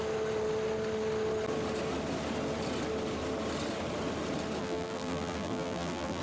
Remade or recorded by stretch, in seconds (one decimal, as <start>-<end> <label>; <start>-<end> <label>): 0.0-4.6 recorded; 4.6-6.2 remade